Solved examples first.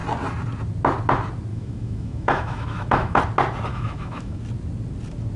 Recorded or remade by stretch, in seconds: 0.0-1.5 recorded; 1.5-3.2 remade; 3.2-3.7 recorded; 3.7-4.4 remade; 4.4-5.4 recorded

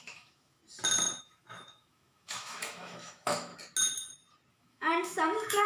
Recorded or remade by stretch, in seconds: 0.0-0.6 remade; 0.6-1.2 recorded; 1.2-3.5 remade; 3.5-4.5 recorded; 4.5-5.7 remade

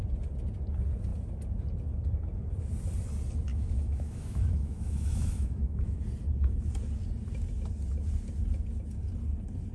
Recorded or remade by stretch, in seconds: 0.0-3.5 recorded; 3.5-6.0 remade; 6.0-9.7 recorded

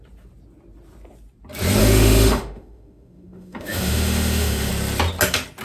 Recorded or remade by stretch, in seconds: 0.0-1.8 recorded; 1.8-4.7 remade; 4.7-5.6 recorded

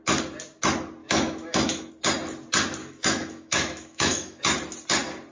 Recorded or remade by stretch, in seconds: 0.0-1.0 recorded; 1.0-1.9 remade; 1.9-2.8 recorded; 2.8-4.4 remade; 4.4-5.3 recorded

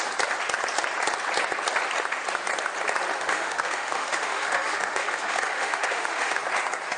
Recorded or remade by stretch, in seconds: 0.0-3.1 recorded; 3.1-6.4 remade; 6.4-7.0 recorded

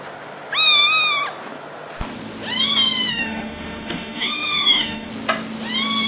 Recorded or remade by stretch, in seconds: 0.0-3.1 recorded; 3.1-5.1 remade; 5.1-6.1 recorded